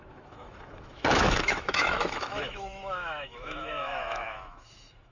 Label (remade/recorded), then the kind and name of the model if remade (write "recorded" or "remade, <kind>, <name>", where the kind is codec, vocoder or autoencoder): remade, autoencoder, DAC-VAE